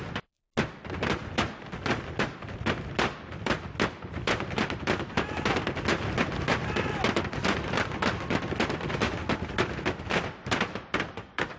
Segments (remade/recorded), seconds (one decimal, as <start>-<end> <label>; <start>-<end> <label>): 0.0-11.6 recorded